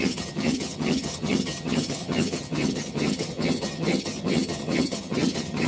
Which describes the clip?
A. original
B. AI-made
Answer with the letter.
B